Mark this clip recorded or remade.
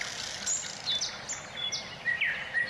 recorded